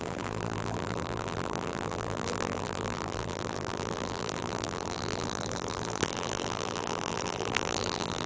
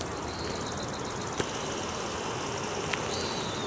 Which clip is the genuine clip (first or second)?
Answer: second